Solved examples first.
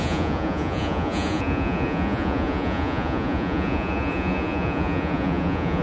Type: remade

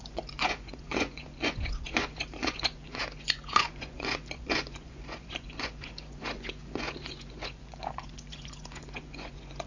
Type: remade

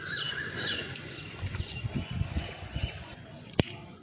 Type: remade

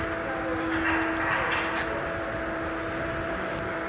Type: recorded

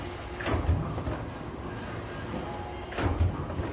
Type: recorded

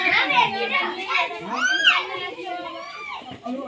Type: recorded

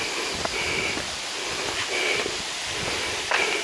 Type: recorded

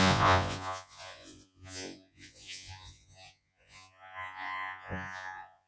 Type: remade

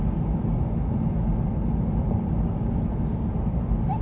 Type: recorded